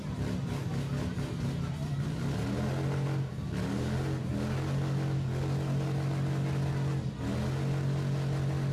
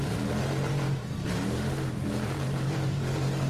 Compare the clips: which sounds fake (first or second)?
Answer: second